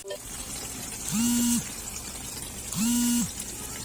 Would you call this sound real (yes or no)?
yes